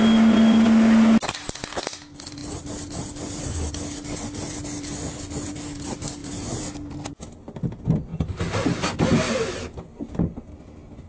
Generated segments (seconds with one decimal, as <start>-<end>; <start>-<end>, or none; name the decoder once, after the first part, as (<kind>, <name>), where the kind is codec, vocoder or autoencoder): 2.4-3.7 (vocoder, BigVGAN v2); 6.2-7.1; 8.1-9.3